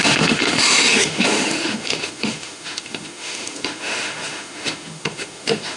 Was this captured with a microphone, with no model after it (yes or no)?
no